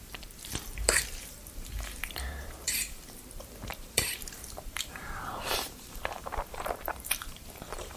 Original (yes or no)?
no